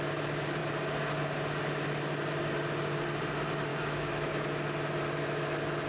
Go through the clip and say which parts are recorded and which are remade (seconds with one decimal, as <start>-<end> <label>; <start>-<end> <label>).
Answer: 0.0-3.7 recorded; 3.7-4.3 remade; 4.3-5.9 recorded